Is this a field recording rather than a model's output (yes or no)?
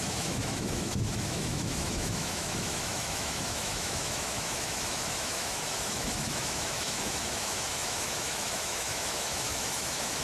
no